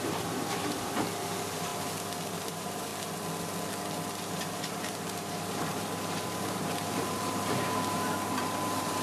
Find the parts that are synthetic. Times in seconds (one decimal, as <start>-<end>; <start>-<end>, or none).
0.0-1.7; 2.3-2.9; 4.1-9.0